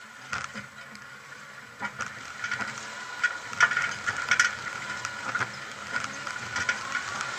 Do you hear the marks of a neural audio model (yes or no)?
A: no